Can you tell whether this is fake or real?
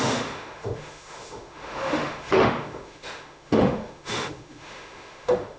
fake